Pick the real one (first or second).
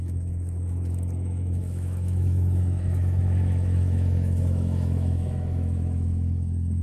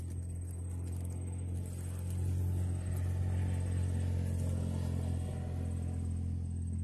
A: second